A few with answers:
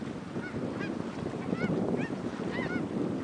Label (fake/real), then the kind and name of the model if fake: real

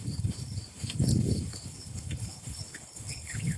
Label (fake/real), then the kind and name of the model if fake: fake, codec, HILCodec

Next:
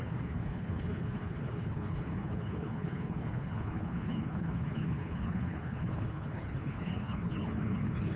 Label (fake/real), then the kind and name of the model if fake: fake, codec, HILCodec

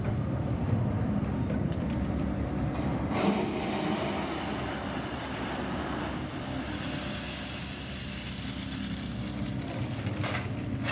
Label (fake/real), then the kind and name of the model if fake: real